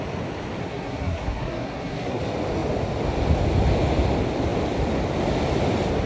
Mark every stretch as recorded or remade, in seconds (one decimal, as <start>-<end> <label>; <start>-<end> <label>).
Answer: 0.0-0.6 recorded; 0.6-2.2 remade; 2.2-6.1 recorded